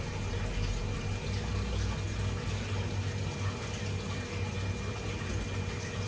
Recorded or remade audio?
recorded